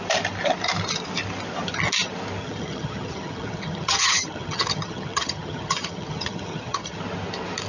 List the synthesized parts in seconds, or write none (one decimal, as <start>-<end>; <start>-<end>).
2.4-7.0